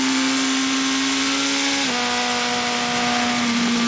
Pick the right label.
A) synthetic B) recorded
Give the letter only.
B